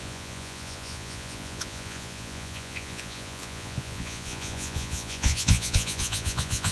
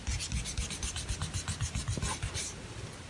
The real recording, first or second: second